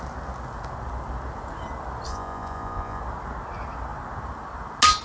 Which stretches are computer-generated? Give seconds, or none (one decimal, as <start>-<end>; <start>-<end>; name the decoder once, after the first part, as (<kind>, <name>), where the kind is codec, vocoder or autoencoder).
2.1-3.0 (vocoder, Vocos)